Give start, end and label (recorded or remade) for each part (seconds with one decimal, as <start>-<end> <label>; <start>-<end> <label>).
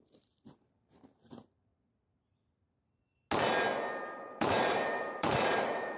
0.0-1.7 remade; 1.7-3.9 recorded; 3.9-6.0 remade